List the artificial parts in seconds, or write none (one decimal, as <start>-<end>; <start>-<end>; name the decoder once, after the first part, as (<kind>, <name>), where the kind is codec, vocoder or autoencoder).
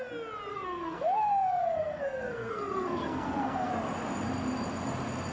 0.5-3.7 (codec, SNAC)